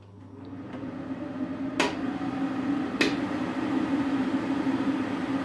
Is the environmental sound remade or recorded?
recorded